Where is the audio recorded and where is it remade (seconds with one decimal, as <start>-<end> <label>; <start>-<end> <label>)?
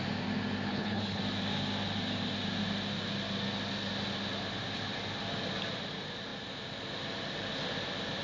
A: 0.0-0.7 recorded; 0.7-1.2 remade; 1.2-8.2 recorded